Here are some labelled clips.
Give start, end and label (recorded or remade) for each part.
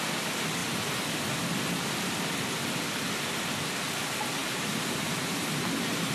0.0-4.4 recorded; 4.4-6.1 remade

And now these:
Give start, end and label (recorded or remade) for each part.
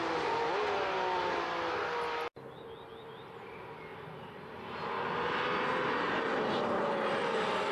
0.0-3.9 recorded; 3.9-4.7 remade; 4.7-7.7 recorded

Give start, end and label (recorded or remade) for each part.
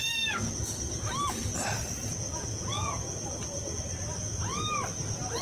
0.0-2.2 recorded; 2.2-3.8 remade; 3.8-5.4 recorded